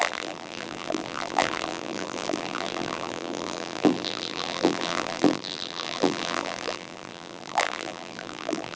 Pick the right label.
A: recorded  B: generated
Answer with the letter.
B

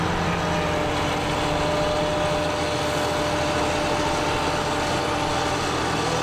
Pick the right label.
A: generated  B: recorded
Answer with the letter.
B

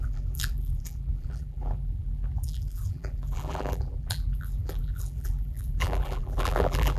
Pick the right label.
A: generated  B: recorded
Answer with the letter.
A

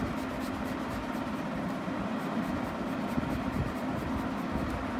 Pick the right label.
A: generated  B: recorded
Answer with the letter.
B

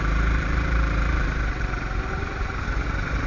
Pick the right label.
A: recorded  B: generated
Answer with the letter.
B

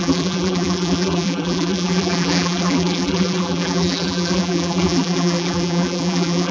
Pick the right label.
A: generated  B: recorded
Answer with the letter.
A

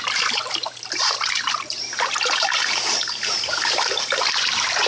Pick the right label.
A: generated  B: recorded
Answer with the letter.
A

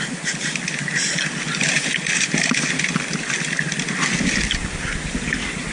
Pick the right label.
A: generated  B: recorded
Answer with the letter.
B